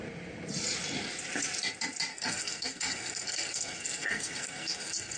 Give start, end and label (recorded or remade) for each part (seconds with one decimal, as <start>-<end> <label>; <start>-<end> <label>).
0.0-2.1 recorded; 2.1-5.2 remade